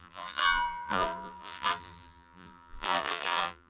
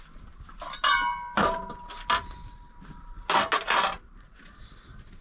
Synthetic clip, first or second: first